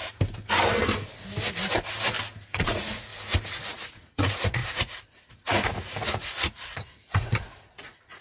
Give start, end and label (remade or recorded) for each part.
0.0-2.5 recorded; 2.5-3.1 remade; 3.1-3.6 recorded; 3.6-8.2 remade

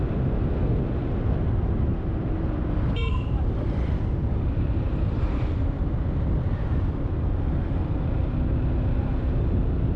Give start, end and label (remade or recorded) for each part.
0.0-1.9 recorded; 1.9-5.5 remade; 5.5-10.0 recorded

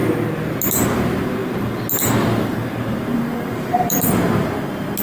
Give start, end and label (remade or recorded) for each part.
0.0-3.1 recorded; 3.1-4.2 remade; 4.2-5.0 recorded

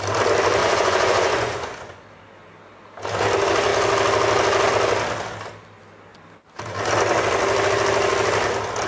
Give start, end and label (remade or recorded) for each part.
0.0-0.6 recorded; 0.6-2.0 remade; 2.0-8.9 recorded